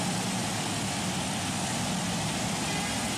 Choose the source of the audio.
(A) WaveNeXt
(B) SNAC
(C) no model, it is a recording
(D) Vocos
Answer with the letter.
C